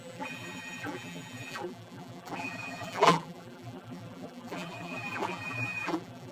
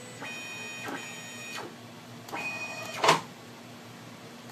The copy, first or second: first